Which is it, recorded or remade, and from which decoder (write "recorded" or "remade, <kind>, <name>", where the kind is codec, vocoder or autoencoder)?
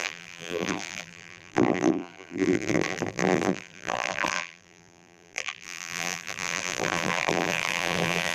remade, vocoder, BigVGAN v2